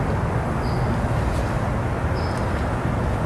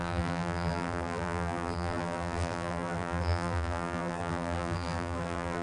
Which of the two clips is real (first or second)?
first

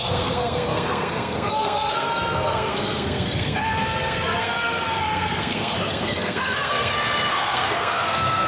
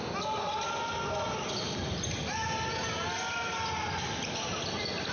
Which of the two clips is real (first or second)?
second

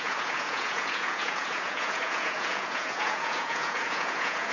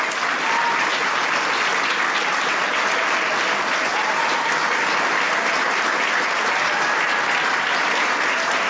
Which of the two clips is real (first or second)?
second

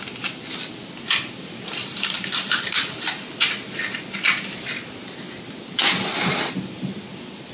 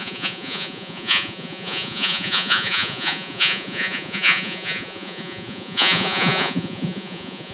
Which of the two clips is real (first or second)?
first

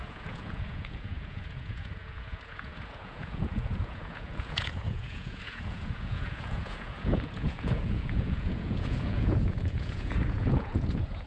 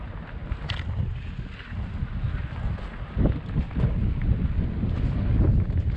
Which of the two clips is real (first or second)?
second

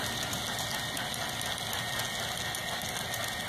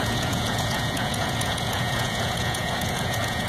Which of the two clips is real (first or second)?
first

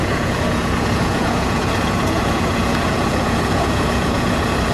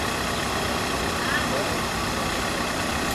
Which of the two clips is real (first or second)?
second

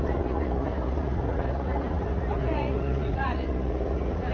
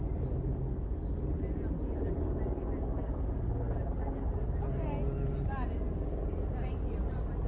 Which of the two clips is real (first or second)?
second